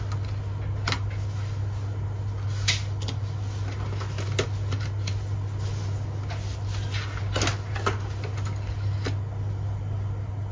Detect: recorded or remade recorded